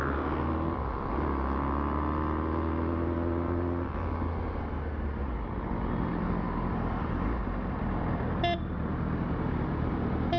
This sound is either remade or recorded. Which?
recorded